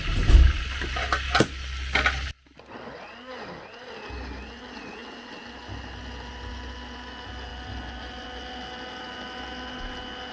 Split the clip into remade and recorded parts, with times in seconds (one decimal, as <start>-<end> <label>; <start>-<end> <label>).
0.0-10.3 recorded